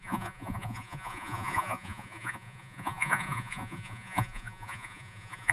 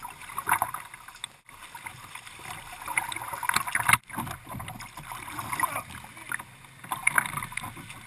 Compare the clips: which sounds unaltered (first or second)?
second